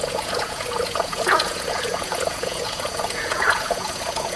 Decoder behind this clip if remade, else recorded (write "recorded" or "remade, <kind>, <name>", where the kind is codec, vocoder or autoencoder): remade, vocoder, Vocos